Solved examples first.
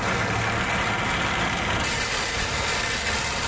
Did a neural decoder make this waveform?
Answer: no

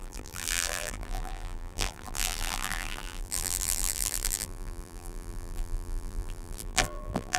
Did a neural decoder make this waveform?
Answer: yes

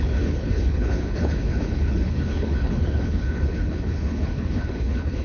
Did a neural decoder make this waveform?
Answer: yes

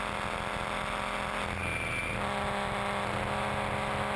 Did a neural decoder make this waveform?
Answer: no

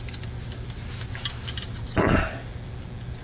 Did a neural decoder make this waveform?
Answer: no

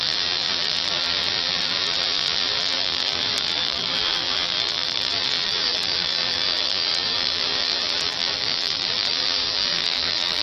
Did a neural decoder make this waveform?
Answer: yes